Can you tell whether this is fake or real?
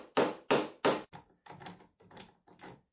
real